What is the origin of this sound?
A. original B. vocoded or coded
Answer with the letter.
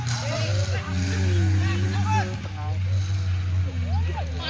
A